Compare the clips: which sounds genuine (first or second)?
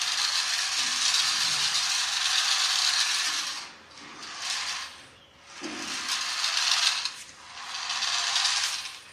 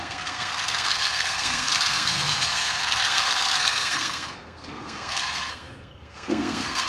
first